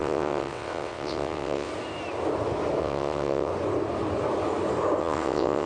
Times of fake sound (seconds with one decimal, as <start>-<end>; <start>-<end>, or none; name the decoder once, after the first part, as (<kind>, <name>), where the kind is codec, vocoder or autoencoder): 0.0-1.7 (vocoder, WaveNeXt); 2.8-3.5; 5.0-5.7